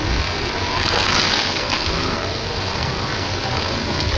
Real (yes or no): no